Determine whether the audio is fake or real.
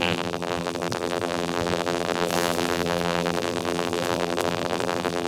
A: fake